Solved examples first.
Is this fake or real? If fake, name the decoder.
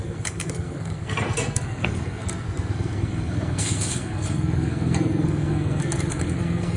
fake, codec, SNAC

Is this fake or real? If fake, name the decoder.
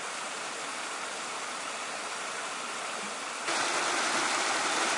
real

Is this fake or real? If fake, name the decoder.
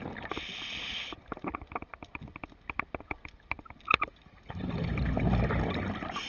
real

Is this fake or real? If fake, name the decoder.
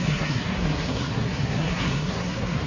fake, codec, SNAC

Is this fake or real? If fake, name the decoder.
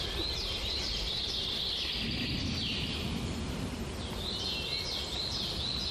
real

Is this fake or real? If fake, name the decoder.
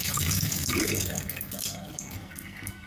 fake, codec, SNAC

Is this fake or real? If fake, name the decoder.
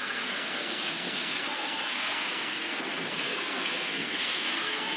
fake, codec, SNAC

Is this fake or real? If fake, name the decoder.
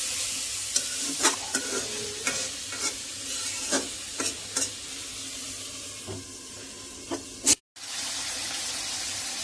real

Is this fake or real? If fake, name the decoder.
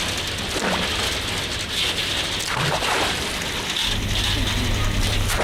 real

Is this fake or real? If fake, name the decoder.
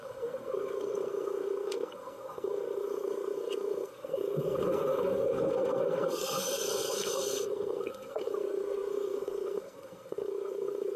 fake, codec, SNAC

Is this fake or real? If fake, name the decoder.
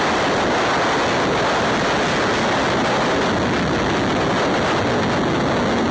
real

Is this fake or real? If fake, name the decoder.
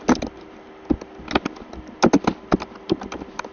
real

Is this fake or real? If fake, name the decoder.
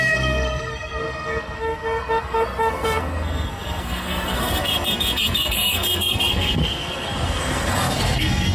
fake, codec, SNAC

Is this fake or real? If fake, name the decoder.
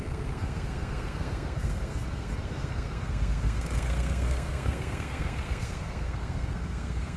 fake, codec, SNAC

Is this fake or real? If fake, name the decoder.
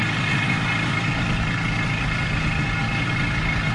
real